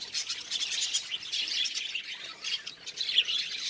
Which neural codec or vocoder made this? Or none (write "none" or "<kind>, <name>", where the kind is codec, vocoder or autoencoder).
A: none